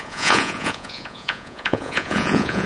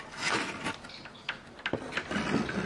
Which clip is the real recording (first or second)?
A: second